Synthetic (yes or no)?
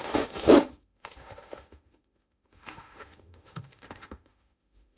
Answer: yes